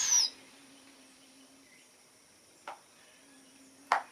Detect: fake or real real